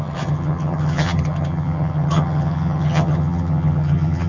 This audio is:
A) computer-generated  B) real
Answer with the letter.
A